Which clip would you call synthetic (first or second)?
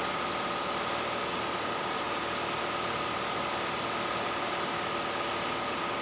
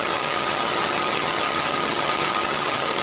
second